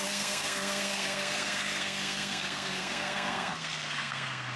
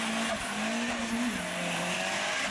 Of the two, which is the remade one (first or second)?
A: first